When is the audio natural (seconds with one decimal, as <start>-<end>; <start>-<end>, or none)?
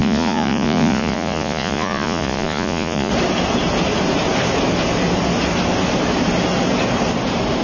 3.1-7.6